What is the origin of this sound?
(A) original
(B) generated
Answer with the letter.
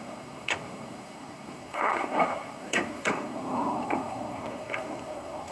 B